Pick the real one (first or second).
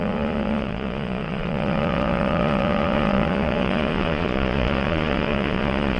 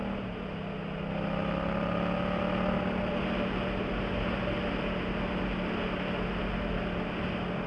second